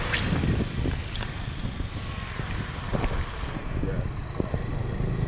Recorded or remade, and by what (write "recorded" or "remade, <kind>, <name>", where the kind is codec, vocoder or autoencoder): recorded